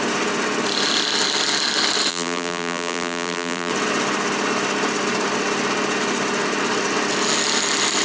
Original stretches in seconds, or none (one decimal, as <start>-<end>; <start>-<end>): 0.0-2.1; 3.7-8.0